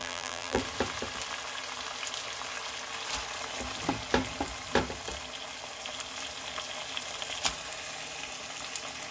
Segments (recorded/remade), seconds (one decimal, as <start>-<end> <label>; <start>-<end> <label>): 0.0-0.6 remade; 0.6-9.1 recorded